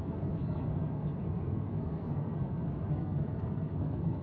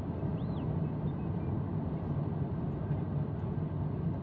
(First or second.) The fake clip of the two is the first